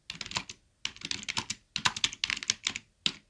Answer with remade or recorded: recorded